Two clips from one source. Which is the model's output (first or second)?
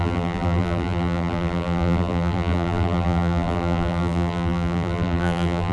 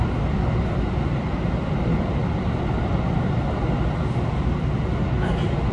first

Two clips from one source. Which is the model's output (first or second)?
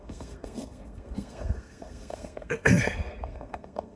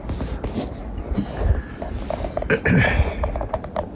first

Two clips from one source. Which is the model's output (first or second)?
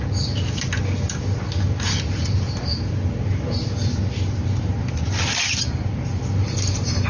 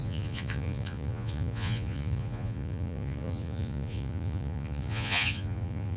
second